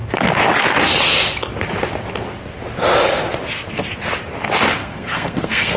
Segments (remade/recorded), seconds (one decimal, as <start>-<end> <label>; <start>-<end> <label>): 0.0-4.8 recorded; 4.8-5.8 remade